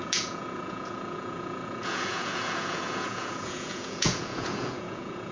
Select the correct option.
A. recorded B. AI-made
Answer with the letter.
B